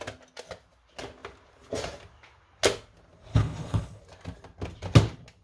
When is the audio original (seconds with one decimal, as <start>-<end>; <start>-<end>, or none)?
0.0-3.3; 4.0-5.4